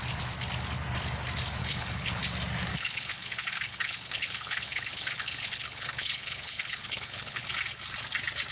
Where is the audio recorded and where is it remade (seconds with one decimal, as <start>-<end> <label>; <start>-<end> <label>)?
0.0-1.6 recorded; 1.6-2.2 remade; 2.2-2.7 recorded; 2.7-7.5 remade; 7.5-8.5 recorded